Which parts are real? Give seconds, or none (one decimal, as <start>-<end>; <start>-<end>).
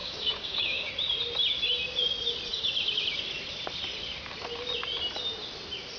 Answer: 0.9-6.0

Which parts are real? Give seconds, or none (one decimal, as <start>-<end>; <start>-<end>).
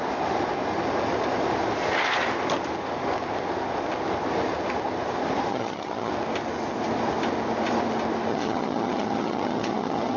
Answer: 0.0-5.5; 6.1-8.3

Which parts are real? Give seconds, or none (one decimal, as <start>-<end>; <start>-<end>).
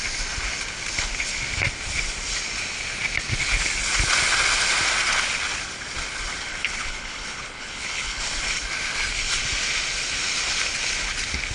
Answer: 0.0-6.5; 8.2-11.5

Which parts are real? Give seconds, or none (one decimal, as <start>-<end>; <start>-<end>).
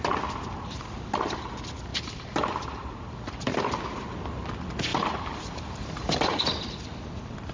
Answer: 0.0-1.9; 3.7-4.9; 6.5-7.5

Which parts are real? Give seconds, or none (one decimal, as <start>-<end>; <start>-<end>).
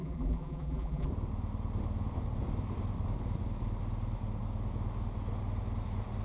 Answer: 1.1-6.2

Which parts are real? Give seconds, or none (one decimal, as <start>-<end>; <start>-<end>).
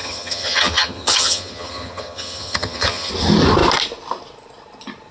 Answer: 3.1-5.1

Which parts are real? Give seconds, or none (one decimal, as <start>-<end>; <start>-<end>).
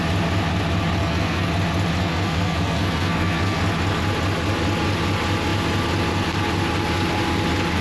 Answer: 0.0-1.0; 1.5-2.0; 3.6-7.8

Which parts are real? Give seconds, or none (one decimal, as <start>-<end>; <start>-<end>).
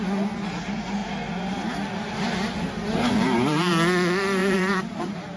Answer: 0.0-2.9; 3.7-4.4